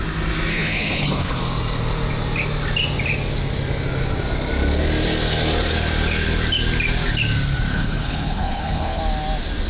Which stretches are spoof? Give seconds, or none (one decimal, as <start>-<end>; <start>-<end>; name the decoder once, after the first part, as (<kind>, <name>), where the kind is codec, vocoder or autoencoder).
0.5-1.4 (codec, HILCodec); 7.7-9.0